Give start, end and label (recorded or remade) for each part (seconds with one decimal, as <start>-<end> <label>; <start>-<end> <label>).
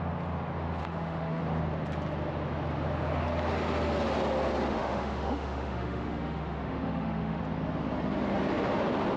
0.0-0.8 recorded; 0.8-1.4 remade; 1.4-4.7 recorded; 4.7-7.4 remade; 7.4-9.2 recorded